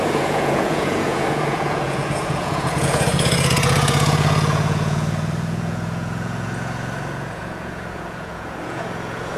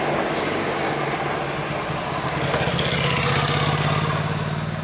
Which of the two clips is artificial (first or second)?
first